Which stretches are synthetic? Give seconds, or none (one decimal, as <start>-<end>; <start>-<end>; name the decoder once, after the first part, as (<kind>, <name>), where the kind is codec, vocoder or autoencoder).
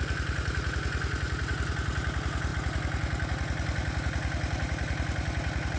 none